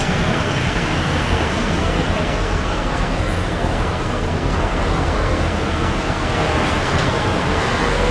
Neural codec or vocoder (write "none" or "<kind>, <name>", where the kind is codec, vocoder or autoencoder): codec, SNAC